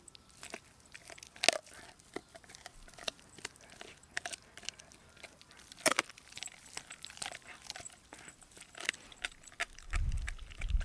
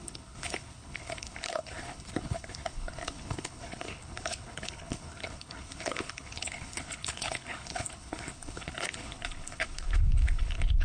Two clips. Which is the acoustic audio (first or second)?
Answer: first